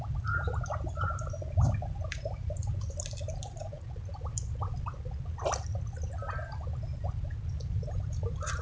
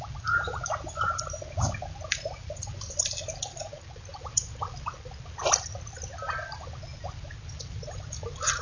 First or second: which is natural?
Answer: second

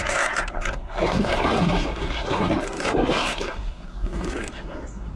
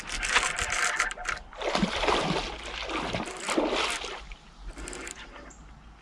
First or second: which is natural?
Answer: second